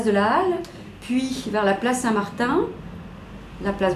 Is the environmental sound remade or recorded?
recorded